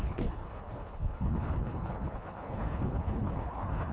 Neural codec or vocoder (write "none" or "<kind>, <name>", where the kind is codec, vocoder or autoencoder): codec, HILCodec